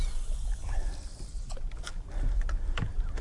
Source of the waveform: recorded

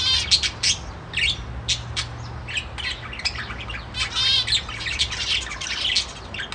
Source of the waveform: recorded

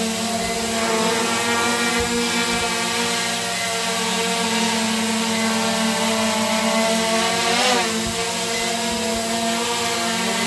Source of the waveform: recorded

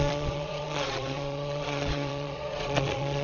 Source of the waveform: remade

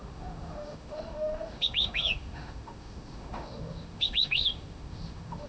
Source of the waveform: remade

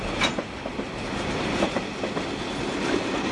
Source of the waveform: recorded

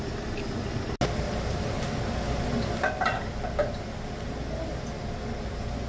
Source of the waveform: recorded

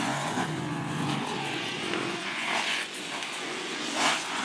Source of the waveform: remade